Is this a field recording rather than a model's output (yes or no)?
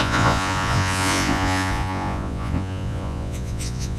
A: no